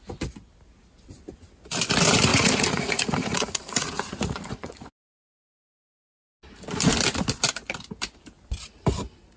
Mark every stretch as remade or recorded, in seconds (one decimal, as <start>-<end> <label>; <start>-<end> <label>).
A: 0.0-2.3 recorded; 2.3-5.6 remade; 5.6-9.4 recorded

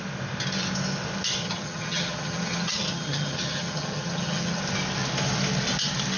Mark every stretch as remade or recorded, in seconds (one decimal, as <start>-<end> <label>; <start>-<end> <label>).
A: 0.0-1.4 recorded; 1.4-4.6 remade; 4.6-6.2 recorded

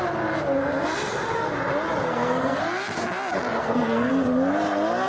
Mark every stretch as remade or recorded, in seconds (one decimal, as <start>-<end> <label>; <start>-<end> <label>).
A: 0.0-2.0 recorded; 2.0-2.6 remade; 2.6-3.6 recorded; 3.6-4.1 remade; 4.1-5.1 recorded

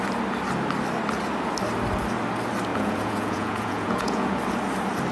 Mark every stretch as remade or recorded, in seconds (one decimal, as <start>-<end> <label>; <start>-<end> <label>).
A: 0.0-2.7 recorded; 2.7-4.4 remade; 4.4-5.1 recorded

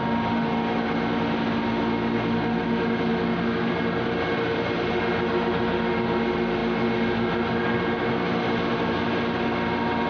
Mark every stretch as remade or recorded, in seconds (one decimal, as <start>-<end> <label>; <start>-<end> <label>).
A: 0.0-10.1 recorded

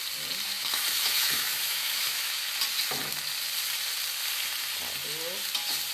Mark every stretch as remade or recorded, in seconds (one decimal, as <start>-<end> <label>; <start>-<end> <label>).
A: 0.0-0.5 recorded; 0.5-2.5 remade; 2.5-5.9 recorded

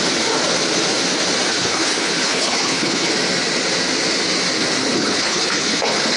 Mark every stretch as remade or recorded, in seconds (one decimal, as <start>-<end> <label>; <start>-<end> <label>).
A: 0.0-1.5 recorded; 1.5-3.1 remade; 3.1-4.8 recorded; 4.8-6.2 remade